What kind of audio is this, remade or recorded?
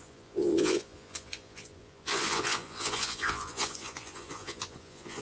remade